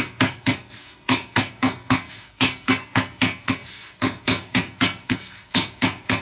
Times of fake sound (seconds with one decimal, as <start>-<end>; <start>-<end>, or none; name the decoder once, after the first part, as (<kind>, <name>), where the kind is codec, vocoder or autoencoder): 0.0-6.2 (codec, SNAC)